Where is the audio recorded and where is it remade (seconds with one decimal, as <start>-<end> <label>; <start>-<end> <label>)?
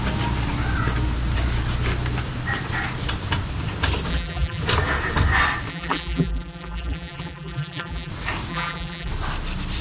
0.0-4.1 recorded; 4.1-4.6 remade; 4.6-5.7 recorded; 5.7-8.1 remade; 8.1-8.5 recorded; 8.5-9.1 remade; 9.1-9.8 recorded